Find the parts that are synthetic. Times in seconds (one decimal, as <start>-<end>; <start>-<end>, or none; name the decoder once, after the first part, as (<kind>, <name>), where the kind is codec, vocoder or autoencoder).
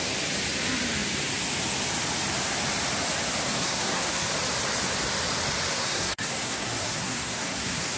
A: 3.6-4.3 (codec, SNAC); 5.7-8.0